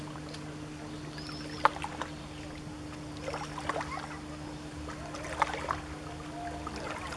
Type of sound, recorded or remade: recorded